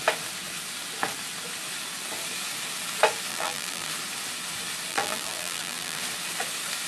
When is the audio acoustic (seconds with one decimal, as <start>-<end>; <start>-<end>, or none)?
0.0-3.3; 3.9-4.9; 6.0-6.9